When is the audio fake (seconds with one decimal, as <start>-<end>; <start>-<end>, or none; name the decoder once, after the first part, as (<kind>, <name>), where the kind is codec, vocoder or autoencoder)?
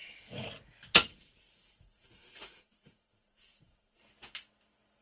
0.0-0.5 (vocoder, Vocos); 1.0-4.0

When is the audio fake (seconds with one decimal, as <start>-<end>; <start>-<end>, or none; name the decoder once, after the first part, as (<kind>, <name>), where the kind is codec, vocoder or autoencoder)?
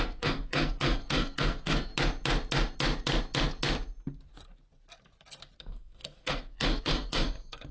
0.0-1.9 (codec, SNAC); 5.6-7.7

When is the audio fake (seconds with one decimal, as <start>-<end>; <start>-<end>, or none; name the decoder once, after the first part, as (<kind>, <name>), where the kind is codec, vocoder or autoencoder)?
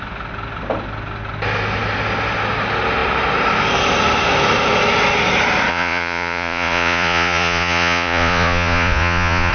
5.7-9.5 (vocoder, Vocos)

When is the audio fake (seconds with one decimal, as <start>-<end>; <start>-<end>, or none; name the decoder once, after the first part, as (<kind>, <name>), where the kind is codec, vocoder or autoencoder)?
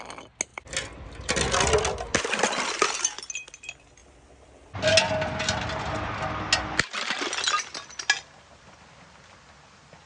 none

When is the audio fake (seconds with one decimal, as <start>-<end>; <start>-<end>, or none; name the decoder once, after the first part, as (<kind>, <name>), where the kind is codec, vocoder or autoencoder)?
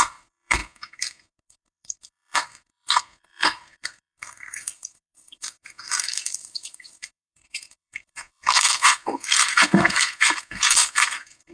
0.0-11.5 (codec, SNAC)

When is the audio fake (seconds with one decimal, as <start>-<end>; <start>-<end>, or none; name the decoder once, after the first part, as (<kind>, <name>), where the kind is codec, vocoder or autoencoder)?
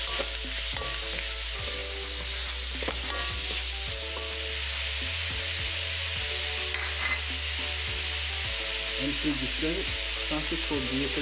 none